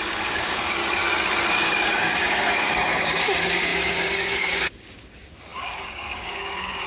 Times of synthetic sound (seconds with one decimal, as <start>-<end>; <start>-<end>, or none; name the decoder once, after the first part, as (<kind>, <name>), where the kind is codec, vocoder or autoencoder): 0.0-0.8 (codec, DAC); 1.5-6.9